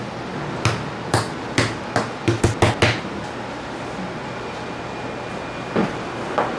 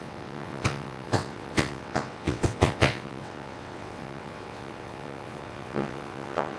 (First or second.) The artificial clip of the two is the second